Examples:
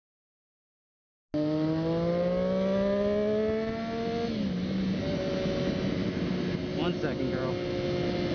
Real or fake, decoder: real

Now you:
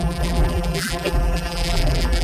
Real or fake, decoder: fake, vocoder, BigVGAN v2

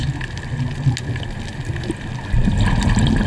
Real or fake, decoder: real